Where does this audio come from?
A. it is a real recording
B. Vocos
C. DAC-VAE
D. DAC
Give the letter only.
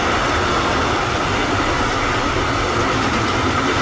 A